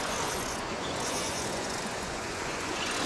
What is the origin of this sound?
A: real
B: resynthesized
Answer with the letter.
B